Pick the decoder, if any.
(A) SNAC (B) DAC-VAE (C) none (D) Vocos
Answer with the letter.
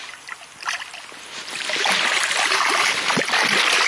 C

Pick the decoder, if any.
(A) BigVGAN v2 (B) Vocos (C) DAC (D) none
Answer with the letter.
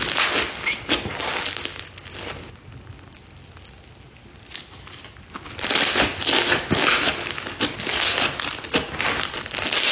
D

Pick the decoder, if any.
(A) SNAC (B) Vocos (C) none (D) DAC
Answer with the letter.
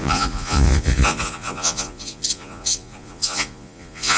B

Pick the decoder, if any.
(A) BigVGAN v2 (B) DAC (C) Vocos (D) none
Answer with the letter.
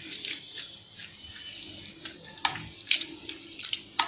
D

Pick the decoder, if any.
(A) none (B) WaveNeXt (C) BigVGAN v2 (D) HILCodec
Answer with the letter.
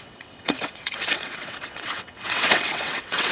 B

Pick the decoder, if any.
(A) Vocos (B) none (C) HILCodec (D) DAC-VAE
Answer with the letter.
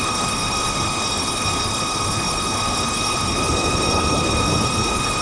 C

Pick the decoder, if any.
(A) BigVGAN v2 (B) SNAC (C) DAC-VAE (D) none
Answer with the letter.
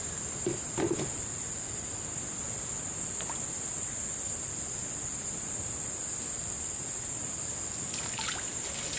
D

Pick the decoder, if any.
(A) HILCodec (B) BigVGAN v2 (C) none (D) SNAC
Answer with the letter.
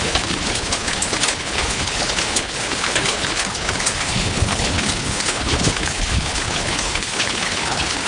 A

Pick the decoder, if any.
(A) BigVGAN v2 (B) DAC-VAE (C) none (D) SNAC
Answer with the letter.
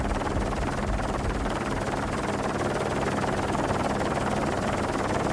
C